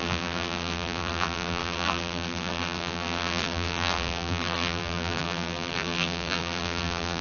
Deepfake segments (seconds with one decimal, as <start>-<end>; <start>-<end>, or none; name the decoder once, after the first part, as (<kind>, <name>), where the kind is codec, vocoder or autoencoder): 0.0-7.2 (vocoder, BigVGAN v2)